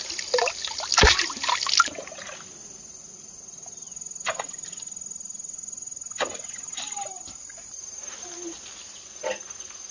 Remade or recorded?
recorded